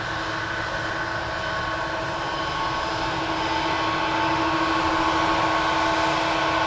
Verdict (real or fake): real